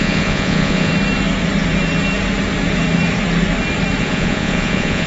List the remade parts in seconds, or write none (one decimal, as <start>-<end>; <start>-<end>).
0.0-0.9; 4.0-5.1